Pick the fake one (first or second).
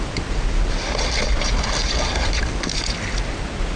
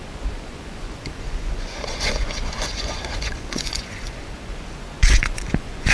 second